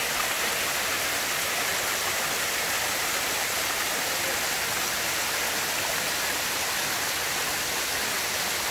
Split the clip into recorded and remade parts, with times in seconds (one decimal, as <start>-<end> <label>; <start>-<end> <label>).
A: 0.0-8.7 recorded